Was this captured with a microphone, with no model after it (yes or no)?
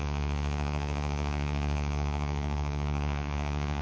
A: no